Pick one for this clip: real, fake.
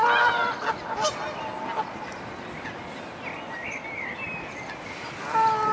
real